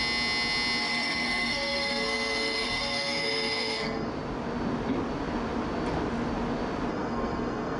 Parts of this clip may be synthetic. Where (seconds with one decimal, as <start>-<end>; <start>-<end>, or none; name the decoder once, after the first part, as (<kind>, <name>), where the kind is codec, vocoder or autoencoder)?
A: 0.8-4.1 (codec, SNAC); 6.9-7.8